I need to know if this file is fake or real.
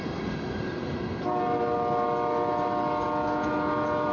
real